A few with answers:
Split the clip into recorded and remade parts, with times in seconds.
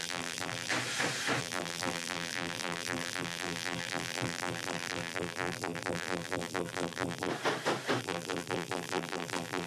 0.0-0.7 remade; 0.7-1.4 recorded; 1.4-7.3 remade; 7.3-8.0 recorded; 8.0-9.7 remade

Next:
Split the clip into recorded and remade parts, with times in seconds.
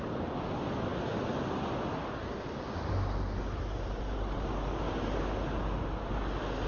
0.0-6.7 recorded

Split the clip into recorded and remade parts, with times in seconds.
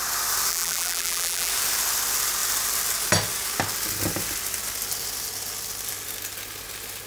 0.0-0.5 recorded; 0.5-1.5 remade; 1.5-7.1 recorded